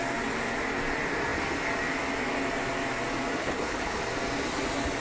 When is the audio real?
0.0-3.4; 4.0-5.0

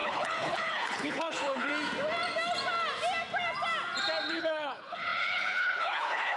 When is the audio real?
1.7-4.3

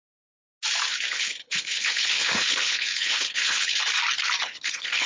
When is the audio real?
0.0-0.9; 3.8-4.4

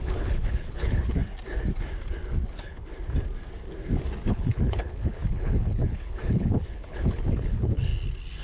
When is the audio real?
1.2-2.5; 2.9-4.3; 7.9-8.4

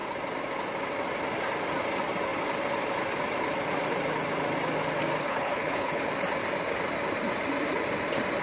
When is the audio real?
0.0-5.2; 6.1-8.4

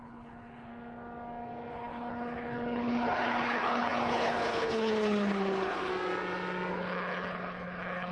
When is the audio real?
0.7-1.7; 5.9-6.7

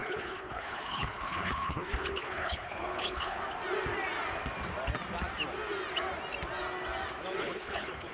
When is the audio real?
3.4-7.4